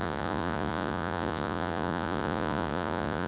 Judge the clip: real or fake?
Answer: fake